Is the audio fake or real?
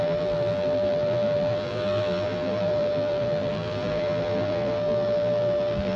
fake